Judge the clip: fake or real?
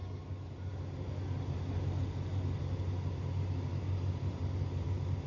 real